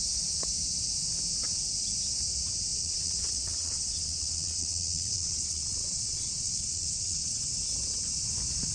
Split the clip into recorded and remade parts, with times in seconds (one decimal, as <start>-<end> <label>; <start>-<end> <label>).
0.0-2.7 recorded; 2.7-7.4 remade; 7.4-8.7 recorded